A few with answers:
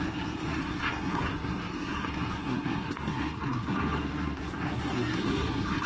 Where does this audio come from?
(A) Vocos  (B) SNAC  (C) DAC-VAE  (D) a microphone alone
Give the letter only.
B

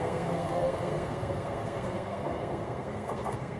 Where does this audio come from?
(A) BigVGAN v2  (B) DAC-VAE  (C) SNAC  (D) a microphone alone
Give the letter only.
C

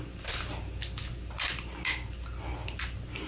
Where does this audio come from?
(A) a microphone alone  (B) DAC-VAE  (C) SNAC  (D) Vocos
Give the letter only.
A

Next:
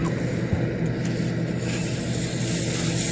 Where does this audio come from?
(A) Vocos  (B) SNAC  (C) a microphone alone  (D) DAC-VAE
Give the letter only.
C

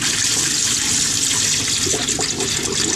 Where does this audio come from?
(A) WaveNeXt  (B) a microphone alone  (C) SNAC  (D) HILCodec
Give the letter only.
B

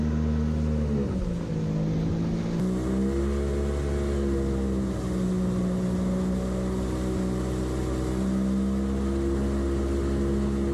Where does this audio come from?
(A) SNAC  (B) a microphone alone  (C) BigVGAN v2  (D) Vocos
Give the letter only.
B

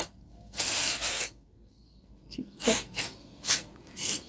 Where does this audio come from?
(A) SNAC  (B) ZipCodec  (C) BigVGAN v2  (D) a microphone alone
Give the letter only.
A